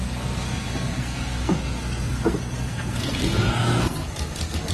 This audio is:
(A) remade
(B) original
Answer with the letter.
A